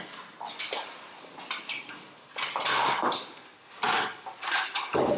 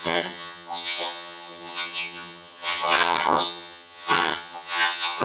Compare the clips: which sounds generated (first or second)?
second